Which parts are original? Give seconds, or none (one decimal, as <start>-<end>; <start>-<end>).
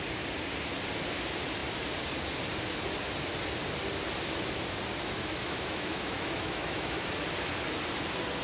0.0-4.9; 7.0-8.4